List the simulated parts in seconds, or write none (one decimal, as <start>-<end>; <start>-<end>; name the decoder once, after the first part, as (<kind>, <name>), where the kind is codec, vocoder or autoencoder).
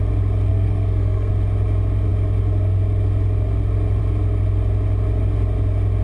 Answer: 0.5-1.3 (codec, SNAC)